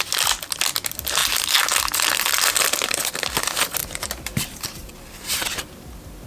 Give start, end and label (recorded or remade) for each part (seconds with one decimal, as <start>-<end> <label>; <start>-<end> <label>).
0.0-3.8 recorded; 3.8-5.6 remade; 5.6-6.3 recorded